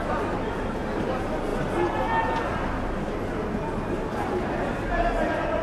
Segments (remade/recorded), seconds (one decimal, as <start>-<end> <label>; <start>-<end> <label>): 0.0-5.6 recorded